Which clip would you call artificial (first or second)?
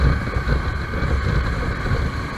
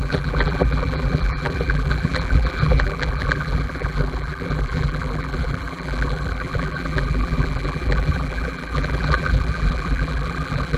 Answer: second